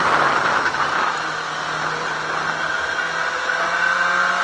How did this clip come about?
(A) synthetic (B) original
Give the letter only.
B